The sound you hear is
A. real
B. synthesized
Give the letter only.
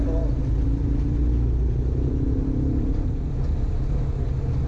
A